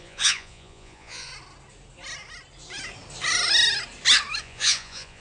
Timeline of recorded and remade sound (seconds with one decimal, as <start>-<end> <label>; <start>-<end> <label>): 0.0-1.3 remade; 1.3-4.4 recorded; 4.4-5.2 remade